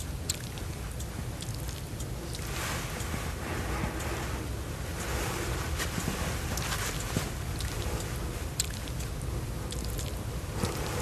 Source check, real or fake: real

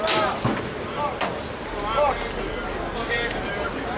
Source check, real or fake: real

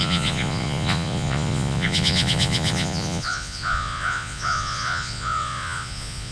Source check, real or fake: fake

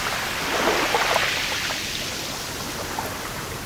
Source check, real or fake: real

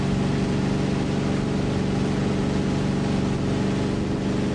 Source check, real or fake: real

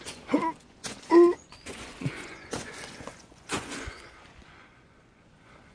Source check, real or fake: fake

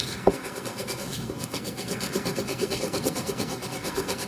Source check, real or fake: fake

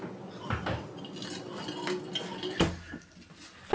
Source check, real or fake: real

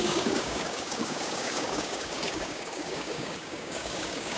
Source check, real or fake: fake